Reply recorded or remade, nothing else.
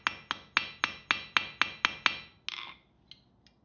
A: recorded